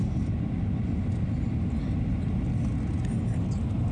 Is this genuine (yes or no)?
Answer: yes